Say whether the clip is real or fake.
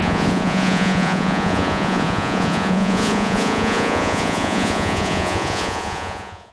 fake